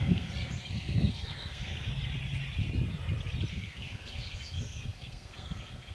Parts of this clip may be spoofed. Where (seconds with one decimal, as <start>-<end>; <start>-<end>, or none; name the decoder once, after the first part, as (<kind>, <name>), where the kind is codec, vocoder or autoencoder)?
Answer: 0.0-1.9 (codec, SNAC); 3.5-5.9